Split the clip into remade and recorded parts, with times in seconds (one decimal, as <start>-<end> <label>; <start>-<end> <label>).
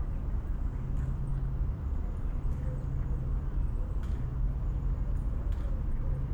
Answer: 0.0-6.3 remade